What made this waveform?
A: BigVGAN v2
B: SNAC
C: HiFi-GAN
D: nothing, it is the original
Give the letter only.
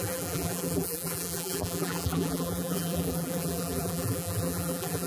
A